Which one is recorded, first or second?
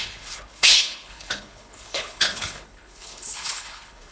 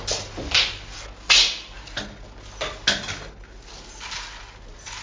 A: second